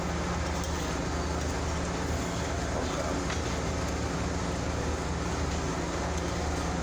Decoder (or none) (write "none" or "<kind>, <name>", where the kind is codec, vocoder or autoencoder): none